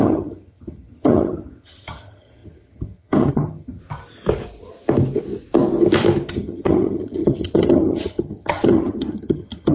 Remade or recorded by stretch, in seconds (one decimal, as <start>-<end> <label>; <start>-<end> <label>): 0.0-3.8 remade; 3.8-6.3 recorded; 6.3-9.7 remade